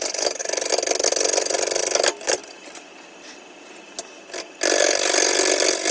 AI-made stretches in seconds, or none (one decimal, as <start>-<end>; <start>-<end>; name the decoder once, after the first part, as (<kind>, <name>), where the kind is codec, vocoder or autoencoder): none